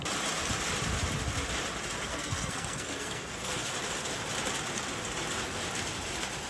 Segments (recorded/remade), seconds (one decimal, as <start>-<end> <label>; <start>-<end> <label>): 0.0-2.1 recorded; 2.1-3.7 remade; 3.7-6.5 recorded